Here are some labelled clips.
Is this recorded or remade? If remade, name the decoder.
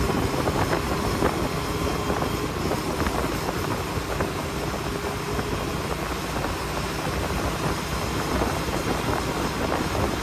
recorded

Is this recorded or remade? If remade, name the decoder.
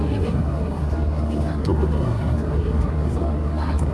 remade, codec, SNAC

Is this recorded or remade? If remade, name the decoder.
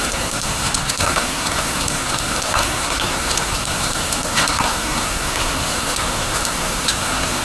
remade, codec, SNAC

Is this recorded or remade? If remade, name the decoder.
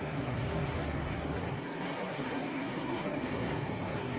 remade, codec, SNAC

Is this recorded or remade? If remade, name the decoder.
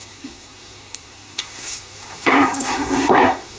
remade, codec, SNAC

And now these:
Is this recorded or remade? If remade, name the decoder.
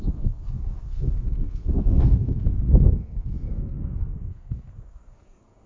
remade, codec, SNAC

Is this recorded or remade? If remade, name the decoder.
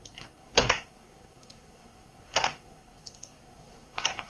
remade, codec, SNAC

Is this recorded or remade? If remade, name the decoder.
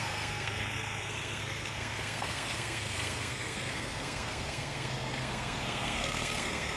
remade, codec, SNAC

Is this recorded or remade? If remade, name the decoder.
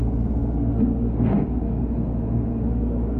remade, codec, SNAC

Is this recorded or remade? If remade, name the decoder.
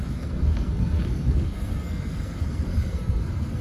remade, codec, SNAC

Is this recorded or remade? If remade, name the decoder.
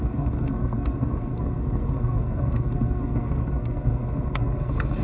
remade, codec, SNAC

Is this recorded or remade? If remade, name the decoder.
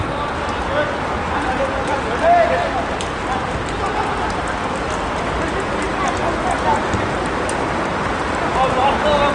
recorded